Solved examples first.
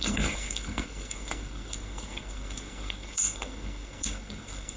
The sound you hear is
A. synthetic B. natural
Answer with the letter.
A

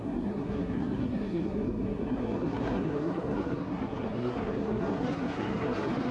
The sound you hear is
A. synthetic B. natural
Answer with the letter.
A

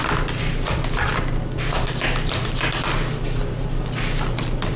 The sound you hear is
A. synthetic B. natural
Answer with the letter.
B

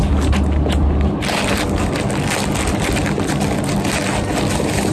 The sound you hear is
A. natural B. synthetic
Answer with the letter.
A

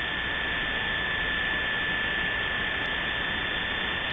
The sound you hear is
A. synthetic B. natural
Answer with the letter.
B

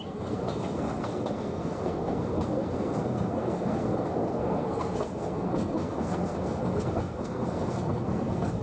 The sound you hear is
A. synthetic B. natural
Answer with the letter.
A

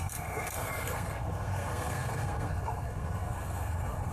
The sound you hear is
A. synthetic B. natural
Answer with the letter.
A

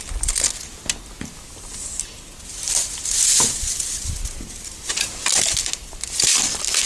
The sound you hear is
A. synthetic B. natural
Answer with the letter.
B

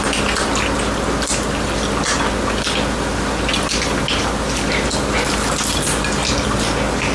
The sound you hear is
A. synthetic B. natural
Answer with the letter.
B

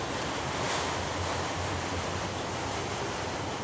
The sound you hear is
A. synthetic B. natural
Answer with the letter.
B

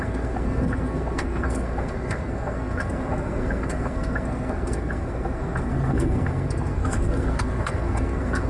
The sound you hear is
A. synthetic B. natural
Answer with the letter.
A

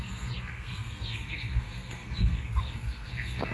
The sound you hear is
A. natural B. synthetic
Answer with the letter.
B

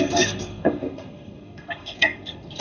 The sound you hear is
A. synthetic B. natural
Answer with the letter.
A